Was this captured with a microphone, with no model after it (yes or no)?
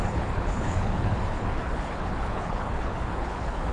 no